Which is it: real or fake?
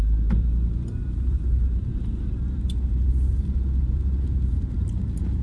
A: fake